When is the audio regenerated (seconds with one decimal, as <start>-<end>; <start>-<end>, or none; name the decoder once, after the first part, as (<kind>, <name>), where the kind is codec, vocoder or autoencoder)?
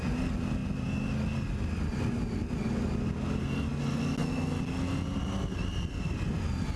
none